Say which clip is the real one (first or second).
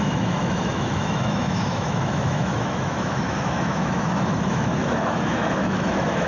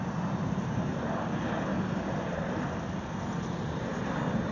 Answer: second